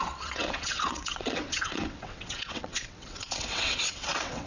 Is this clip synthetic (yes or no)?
yes